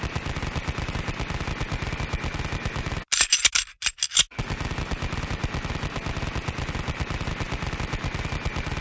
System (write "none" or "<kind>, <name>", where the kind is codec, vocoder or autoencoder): none